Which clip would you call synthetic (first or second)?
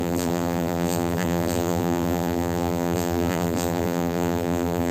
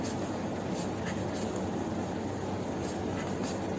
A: first